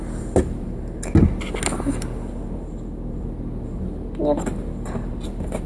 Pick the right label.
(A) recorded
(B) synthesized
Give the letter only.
A